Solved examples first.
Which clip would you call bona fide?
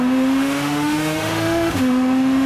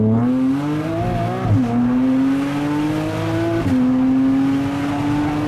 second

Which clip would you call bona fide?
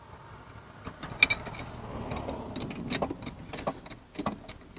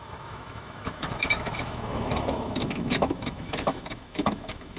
first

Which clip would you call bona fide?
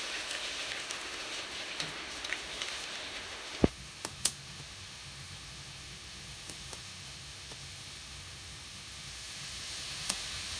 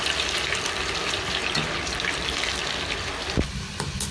second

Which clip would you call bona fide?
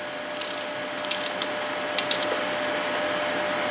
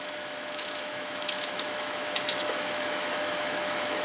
first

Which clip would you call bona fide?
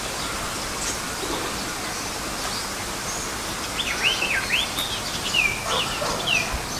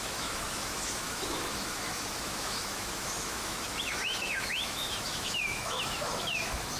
first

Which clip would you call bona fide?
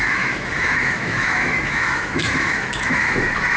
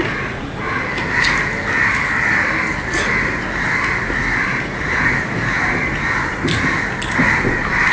second